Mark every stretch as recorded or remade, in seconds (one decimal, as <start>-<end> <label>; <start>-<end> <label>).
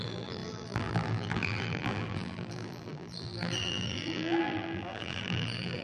0.0-5.8 remade